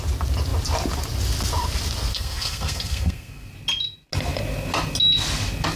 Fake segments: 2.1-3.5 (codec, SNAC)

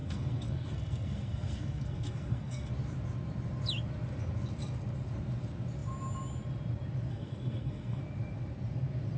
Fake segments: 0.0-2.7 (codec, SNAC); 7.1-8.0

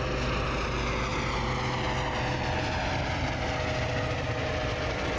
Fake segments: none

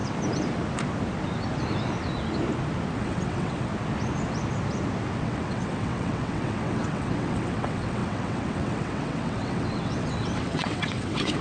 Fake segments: 3.0-3.7 (vocoder, WaveNeXt); 5.2-11.4